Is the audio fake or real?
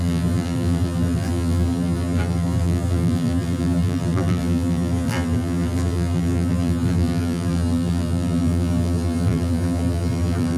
fake